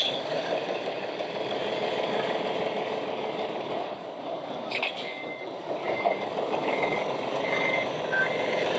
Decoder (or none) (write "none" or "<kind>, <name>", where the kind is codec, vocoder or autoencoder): codec, DAC